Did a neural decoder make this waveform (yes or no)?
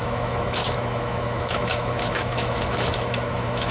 yes